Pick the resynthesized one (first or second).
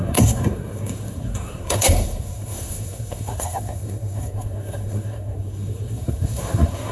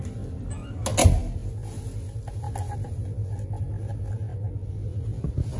first